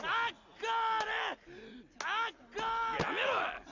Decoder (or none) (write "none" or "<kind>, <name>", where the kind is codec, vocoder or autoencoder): none